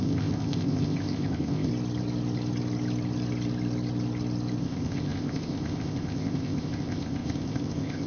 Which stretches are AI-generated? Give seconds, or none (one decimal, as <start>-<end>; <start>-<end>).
0.0-1.7; 4.6-8.1